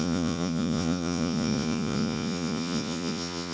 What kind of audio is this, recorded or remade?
remade